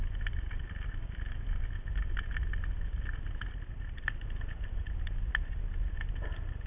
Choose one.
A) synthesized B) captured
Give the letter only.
B